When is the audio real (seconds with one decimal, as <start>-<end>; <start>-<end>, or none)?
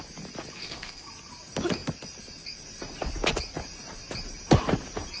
0.0-0.6; 1.1-5.2